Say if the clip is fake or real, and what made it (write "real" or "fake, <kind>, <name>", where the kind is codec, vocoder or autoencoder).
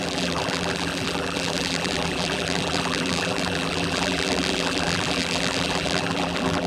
fake, vocoder, BigVGAN v2